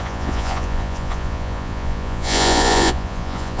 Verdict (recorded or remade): remade